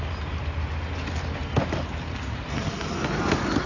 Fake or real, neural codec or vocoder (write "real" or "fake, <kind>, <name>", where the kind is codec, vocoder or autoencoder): real